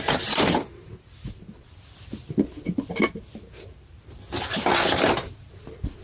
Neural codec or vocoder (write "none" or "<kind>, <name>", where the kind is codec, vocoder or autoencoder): none